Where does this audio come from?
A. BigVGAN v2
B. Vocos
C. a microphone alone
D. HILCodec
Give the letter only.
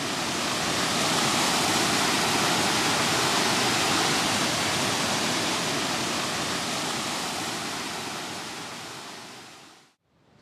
C